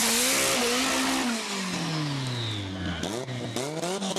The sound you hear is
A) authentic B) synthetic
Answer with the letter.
A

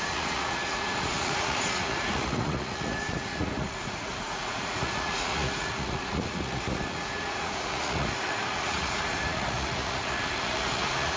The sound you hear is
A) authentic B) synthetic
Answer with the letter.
B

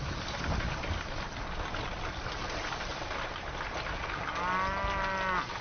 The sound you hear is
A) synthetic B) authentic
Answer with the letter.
B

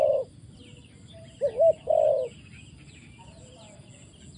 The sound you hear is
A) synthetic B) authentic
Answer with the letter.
B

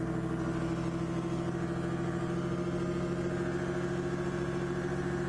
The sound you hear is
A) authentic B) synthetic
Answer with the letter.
A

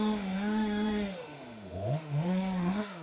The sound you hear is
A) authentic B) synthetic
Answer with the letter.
B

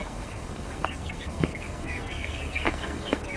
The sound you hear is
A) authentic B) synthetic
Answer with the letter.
B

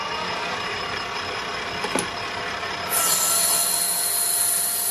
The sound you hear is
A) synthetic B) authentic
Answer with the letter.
B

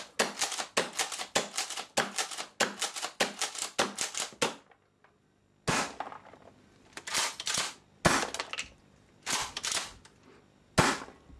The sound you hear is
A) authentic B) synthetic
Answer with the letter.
A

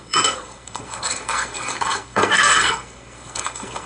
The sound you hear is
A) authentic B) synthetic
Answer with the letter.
B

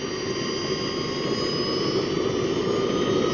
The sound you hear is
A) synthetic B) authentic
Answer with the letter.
B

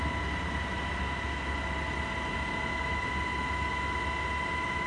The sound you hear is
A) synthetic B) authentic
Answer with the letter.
B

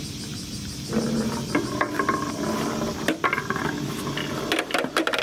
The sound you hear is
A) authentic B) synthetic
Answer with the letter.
A